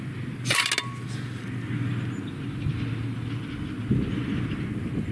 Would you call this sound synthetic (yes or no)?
no